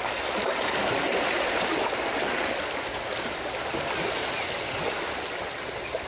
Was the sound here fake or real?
real